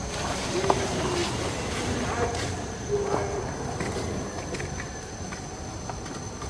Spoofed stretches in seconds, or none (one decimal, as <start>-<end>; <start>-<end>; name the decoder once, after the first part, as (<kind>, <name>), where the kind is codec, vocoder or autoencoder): none